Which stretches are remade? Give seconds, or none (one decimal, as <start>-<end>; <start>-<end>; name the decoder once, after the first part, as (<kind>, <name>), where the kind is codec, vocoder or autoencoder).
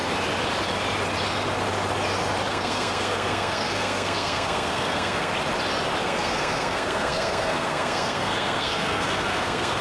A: 2.5-5.3 (codec, SNAC); 6.0-9.8